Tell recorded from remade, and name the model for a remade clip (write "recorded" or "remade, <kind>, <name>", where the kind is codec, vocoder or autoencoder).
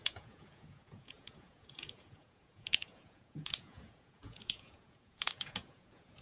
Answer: remade, vocoder, Vocos